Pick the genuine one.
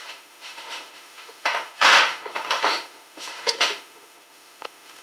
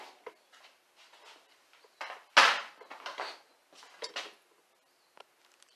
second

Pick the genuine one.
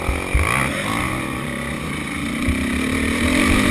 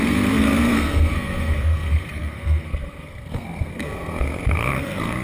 first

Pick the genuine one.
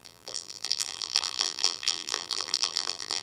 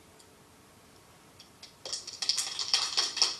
second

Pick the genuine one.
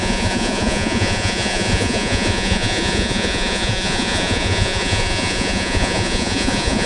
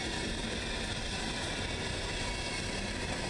second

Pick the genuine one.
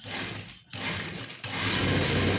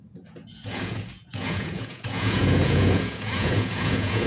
first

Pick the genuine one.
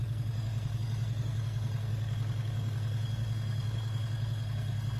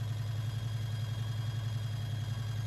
second